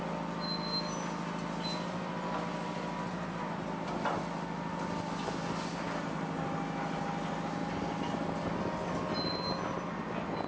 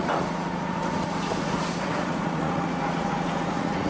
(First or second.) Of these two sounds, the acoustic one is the first